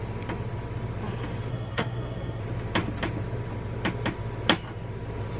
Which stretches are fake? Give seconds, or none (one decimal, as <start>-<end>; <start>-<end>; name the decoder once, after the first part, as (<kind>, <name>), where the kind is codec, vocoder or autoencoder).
1.5-2.4 (codec, SNAC)